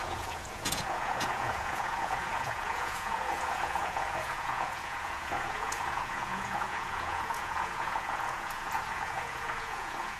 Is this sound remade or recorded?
remade